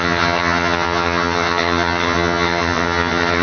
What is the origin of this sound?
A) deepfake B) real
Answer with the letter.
A